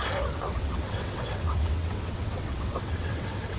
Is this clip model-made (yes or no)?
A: yes